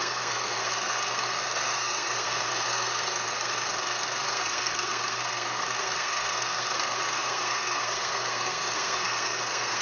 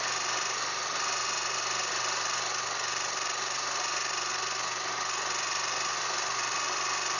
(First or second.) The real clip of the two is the second